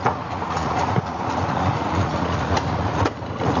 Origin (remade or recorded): remade